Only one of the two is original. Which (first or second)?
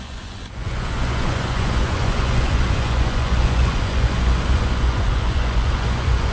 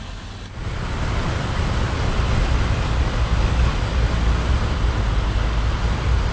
second